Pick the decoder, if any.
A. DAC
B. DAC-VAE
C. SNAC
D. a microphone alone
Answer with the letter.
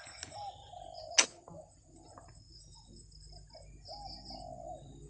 D